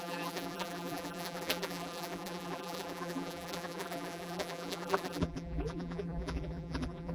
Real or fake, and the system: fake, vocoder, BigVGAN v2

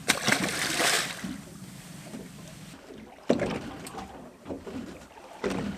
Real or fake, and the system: fake, vocoder, BigVGAN v2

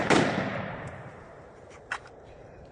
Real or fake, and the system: fake, vocoder, BigVGAN v2